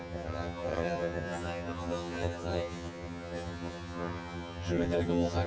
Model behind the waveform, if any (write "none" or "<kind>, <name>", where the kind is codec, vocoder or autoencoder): vocoder, HiFi-GAN